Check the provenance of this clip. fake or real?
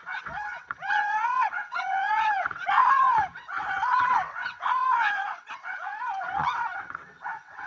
fake